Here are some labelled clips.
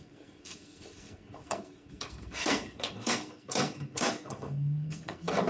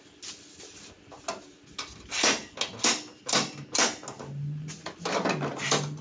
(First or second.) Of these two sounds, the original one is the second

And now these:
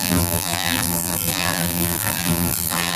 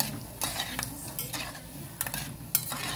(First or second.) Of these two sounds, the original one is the second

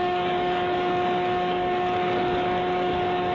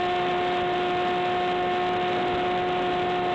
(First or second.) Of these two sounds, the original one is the second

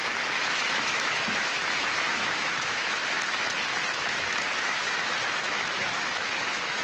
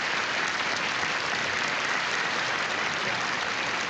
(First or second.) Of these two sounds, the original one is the second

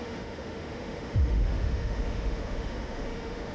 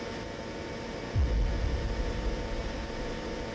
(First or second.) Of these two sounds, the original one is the second